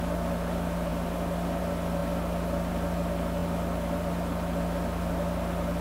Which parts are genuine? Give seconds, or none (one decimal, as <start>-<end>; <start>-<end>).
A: 0.0-5.8